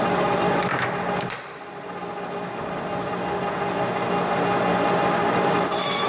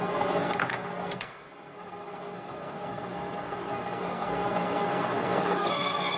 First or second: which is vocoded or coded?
second